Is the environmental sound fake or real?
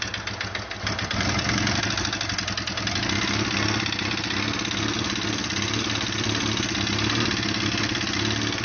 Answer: real